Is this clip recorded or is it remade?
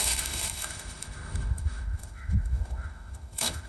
remade